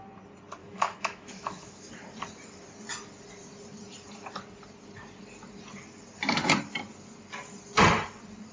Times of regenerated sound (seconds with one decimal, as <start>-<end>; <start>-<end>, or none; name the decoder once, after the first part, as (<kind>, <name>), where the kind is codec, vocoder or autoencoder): 0.6-1.9 (autoencoder, DAC-VAE)